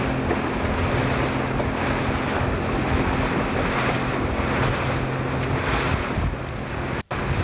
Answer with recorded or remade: recorded